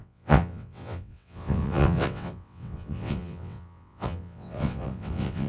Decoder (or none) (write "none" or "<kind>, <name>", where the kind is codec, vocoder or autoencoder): vocoder, WaveNeXt